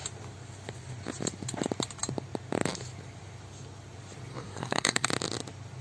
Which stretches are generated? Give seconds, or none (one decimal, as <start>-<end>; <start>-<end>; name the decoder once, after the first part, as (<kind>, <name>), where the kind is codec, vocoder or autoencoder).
4.3-5.1 (codec, SNAC)